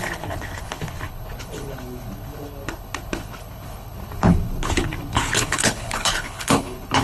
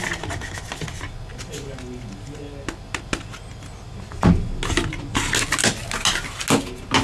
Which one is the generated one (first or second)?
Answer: first